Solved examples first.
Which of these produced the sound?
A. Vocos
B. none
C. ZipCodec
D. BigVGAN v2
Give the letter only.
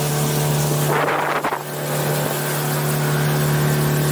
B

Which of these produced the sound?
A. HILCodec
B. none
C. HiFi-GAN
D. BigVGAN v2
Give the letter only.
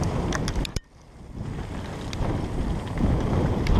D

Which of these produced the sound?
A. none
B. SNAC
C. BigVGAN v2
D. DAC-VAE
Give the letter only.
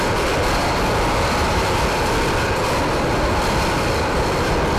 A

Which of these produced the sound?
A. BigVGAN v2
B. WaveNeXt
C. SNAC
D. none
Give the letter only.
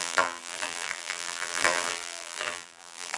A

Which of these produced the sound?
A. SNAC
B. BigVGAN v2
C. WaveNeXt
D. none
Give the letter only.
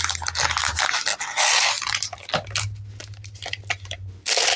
D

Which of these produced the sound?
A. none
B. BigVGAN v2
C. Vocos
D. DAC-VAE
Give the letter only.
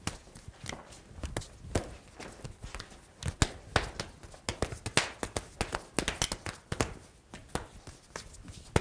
A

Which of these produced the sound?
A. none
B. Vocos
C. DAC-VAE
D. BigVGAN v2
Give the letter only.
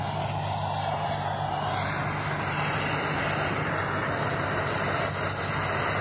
A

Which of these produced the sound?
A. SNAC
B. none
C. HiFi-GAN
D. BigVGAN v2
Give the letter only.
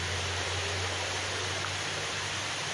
B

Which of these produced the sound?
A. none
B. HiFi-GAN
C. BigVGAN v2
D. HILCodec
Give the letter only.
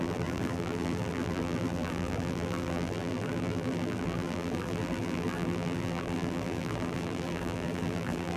C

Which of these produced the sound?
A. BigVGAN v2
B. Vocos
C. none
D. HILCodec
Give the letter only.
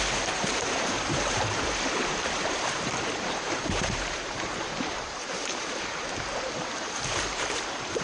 A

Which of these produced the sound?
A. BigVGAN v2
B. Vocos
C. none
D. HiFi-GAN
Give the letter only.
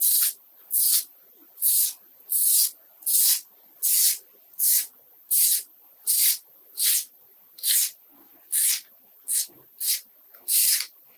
C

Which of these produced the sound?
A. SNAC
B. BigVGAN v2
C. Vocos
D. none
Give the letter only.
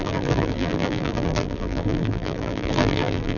B